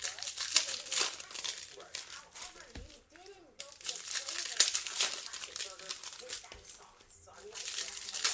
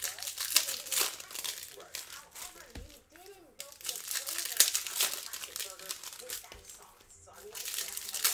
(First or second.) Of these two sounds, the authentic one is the second